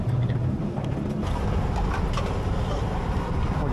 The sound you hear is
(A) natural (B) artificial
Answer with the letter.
B